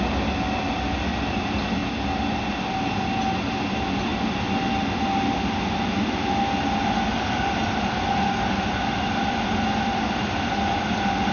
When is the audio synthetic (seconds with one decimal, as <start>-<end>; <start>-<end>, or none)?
none